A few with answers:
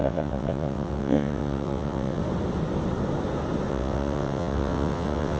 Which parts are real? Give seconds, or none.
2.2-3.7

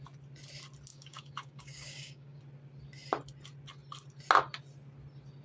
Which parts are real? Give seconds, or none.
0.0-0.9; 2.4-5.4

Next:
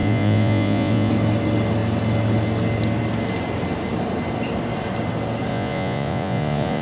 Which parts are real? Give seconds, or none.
1.1-5.5

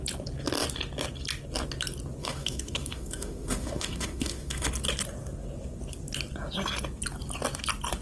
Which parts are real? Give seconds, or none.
0.0-2.2; 4.7-8.0